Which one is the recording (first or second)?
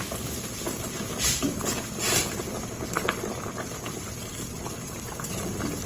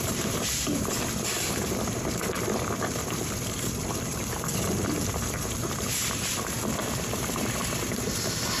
first